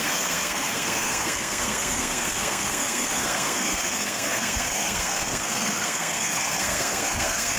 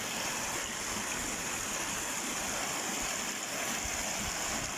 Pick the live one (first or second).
second